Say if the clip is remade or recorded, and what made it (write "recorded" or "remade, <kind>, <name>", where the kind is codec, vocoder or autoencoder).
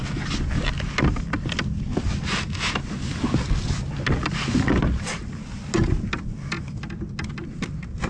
recorded